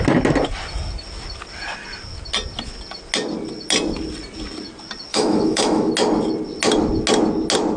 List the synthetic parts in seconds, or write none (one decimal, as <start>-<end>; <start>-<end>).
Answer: 5.1-5.9